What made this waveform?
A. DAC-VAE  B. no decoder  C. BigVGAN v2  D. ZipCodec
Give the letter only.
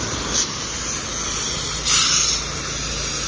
B